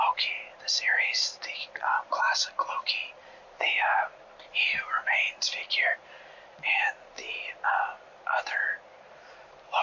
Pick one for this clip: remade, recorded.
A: remade